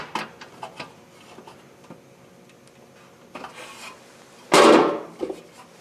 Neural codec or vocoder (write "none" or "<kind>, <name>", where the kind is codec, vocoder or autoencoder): none